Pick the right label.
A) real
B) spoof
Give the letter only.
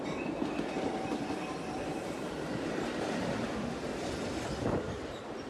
A